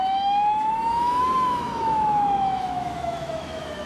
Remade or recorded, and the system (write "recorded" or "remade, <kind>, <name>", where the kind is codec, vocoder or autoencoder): remade, autoencoder, DAC-VAE